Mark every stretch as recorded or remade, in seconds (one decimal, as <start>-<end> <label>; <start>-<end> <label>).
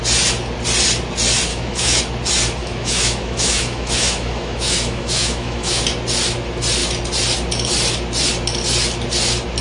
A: 0.0-1.5 recorded; 1.5-2.0 remade; 2.0-2.6 recorded; 2.6-5.8 remade; 5.8-9.6 recorded